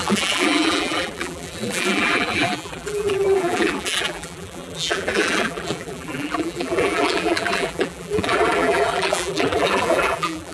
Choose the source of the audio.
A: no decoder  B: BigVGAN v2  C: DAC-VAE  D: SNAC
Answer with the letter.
B